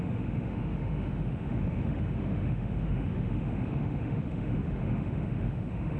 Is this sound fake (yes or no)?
yes